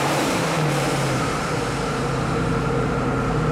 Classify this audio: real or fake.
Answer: fake